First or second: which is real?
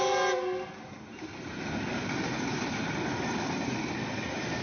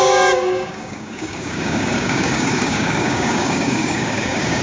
first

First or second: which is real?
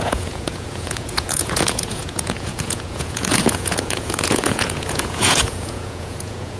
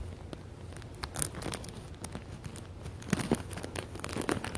second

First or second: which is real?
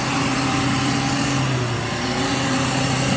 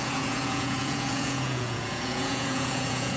first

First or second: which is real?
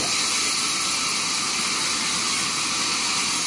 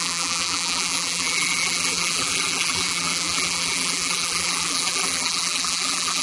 first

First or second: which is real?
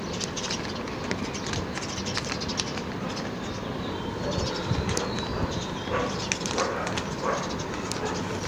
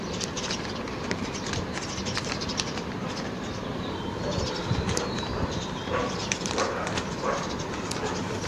first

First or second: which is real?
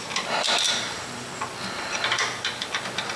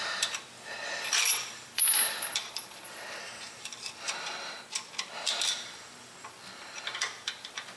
first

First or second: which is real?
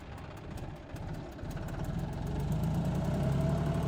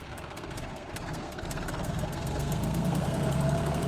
first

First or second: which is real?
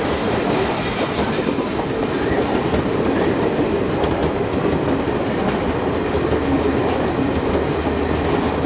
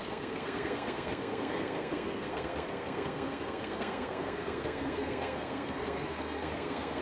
first